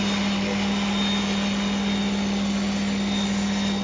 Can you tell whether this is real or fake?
real